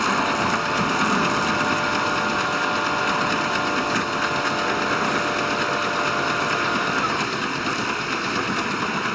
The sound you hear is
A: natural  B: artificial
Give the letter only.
A